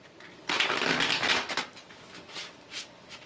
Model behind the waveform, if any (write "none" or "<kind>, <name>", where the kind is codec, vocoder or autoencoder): none